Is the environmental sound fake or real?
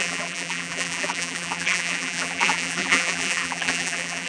fake